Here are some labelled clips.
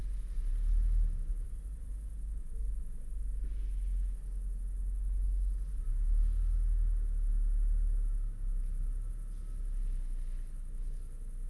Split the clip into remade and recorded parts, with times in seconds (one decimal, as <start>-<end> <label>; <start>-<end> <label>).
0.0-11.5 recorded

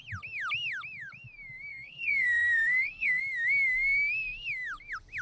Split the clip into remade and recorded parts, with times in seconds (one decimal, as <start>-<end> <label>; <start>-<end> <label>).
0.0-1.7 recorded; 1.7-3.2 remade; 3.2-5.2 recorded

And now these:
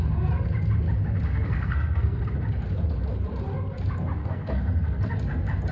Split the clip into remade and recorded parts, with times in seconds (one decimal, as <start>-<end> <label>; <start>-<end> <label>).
0.0-1.3 recorded; 1.3-2.2 remade; 2.2-4.2 recorded; 4.2-5.1 remade; 5.1-5.7 recorded